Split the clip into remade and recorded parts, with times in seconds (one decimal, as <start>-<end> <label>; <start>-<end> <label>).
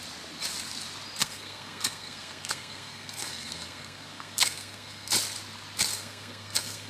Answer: 0.0-1.2 recorded; 1.2-5.1 remade; 5.1-5.9 recorded; 5.9-6.9 remade